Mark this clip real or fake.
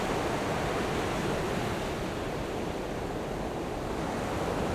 real